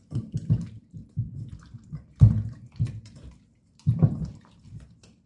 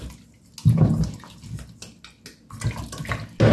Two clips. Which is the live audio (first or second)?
second